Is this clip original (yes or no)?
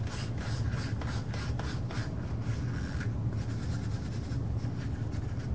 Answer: yes